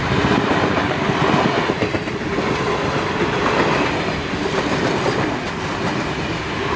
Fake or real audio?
real